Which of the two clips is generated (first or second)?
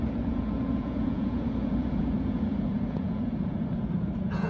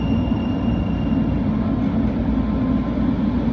first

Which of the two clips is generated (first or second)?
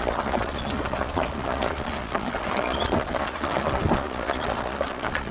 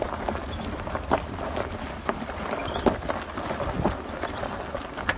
first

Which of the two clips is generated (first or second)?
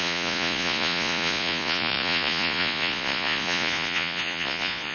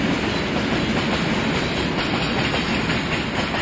first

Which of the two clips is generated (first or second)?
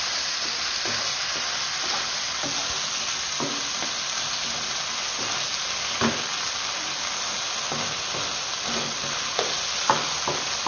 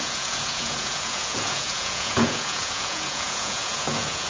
second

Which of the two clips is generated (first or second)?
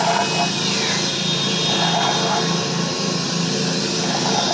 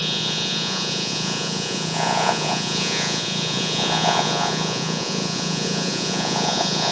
second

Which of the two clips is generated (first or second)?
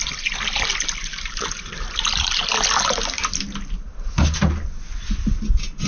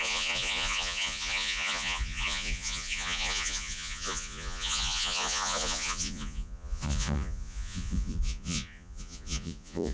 second